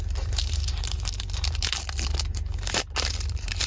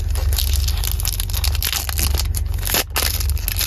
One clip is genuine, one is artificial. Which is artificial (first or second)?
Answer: first